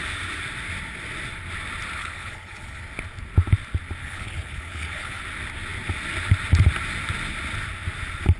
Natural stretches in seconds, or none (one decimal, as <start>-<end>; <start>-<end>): 0.0-2.0; 2.8-4.0; 5.2-8.4